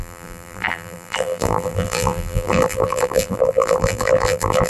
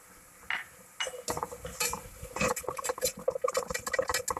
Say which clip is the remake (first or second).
first